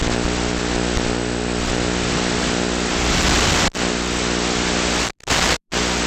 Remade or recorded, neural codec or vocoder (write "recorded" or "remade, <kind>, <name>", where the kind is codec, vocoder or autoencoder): recorded